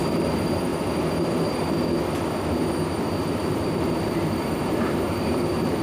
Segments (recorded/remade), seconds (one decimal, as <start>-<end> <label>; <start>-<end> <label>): 0.0-0.7 remade; 0.7-3.2 recorded; 3.2-5.8 remade